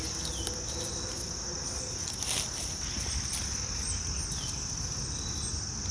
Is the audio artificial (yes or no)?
no